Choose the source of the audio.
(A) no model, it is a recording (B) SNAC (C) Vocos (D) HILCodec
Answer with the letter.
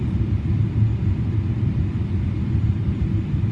A